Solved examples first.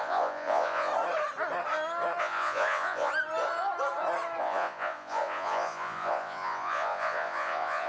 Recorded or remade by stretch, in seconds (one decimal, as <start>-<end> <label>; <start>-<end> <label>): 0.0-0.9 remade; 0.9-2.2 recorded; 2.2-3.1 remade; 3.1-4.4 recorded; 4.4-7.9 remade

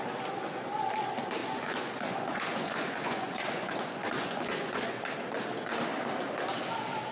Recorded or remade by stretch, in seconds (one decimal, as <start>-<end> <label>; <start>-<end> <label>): 0.0-1.4 recorded; 1.4-5.0 remade; 5.0-7.1 recorded

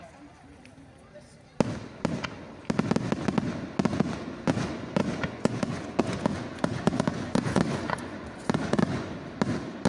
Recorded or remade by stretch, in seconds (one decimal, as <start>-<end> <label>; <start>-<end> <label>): 0.0-3.9 recorded; 3.9-9.1 remade; 9.1-9.9 recorded

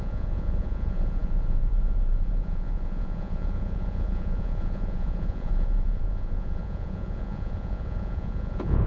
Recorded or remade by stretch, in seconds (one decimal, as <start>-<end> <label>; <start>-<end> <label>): 0.0-8.9 remade

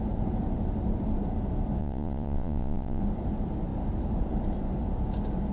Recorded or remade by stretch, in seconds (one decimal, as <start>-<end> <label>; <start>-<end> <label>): 0.0-1.8 recorded; 1.8-3.0 remade; 3.0-5.5 recorded

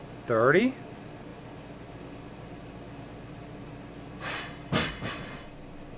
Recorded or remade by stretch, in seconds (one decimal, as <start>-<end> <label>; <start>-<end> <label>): 0.0-6.0 recorded